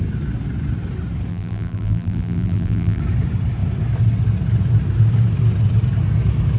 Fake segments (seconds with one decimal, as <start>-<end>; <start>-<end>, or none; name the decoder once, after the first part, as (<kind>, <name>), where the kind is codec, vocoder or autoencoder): 1.3-3.0 (vocoder, BigVGAN v2)